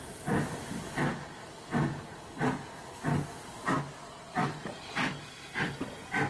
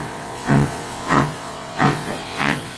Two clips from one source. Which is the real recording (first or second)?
first